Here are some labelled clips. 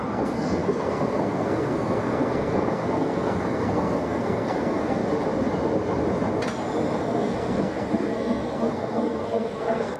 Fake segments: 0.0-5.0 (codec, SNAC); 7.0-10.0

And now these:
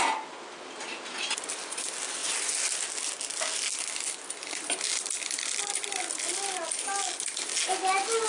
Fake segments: none

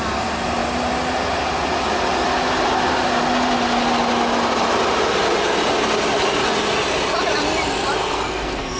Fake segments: 8.0-8.8 (codec, SNAC)

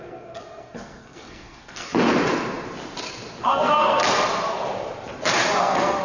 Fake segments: 0.0-1.9 (codec, SNAC); 3.4-4.0; 5.6-6.0